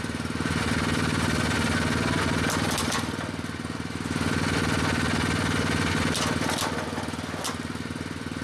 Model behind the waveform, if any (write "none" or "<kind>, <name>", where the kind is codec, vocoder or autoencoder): none